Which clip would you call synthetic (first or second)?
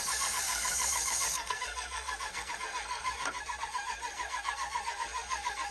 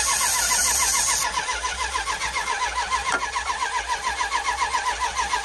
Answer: first